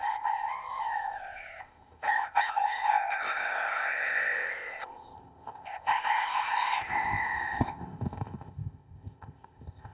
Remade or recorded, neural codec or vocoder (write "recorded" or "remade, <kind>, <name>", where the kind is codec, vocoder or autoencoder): remade, codec, ZipCodec